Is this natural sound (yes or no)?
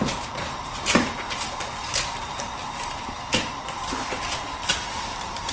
no